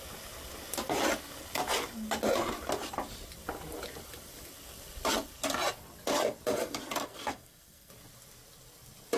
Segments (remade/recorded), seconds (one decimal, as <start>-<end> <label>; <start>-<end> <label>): 0.0-7.0 recorded; 7.0-7.9 remade; 7.9-9.2 recorded